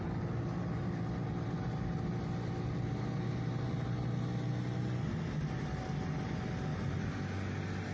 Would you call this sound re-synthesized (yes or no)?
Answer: no